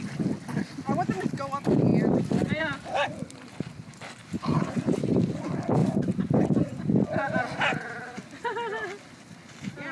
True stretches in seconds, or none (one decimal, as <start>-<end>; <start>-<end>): 0.0-4.2; 5.0-5.8; 6.4-9.9